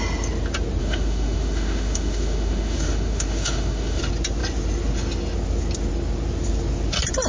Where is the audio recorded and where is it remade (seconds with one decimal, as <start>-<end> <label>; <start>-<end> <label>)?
0.0-0.8 recorded; 0.8-4.0 remade; 4.0-7.3 recorded

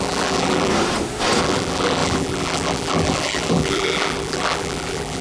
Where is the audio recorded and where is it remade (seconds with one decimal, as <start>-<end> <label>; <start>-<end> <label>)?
0.0-0.7 remade; 0.7-1.4 recorded; 1.4-5.2 remade

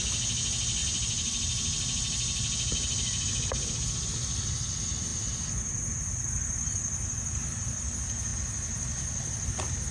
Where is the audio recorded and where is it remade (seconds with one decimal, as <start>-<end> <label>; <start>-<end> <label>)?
0.0-9.9 recorded

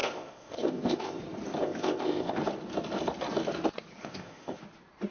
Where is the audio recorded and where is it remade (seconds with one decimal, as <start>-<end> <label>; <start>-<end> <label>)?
0.0-1.2 remade; 1.2-1.6 recorded; 1.6-2.4 remade; 2.4-4.0 recorded; 4.0-4.6 remade; 4.6-5.1 recorded

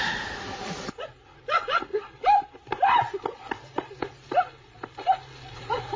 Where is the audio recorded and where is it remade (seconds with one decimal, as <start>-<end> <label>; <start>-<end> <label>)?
0.0-1.9 remade; 1.9-5.5 recorded; 5.5-6.0 remade

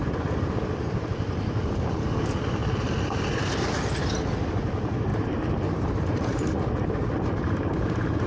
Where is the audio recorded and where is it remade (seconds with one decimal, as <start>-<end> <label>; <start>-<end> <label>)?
0.0-5.1 recorded; 5.1-6.6 remade; 6.6-8.3 recorded